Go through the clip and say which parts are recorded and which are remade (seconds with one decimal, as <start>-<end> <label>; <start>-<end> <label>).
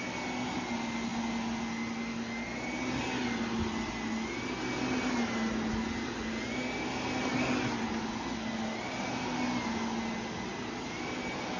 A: 0.0-11.6 recorded